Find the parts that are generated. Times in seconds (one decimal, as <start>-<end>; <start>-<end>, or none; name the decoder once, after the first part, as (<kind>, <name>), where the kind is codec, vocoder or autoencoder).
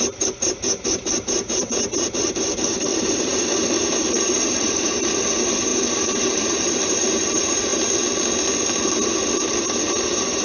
0.0-7.7 (vocoder, BigVGAN v2); 9.8-10.4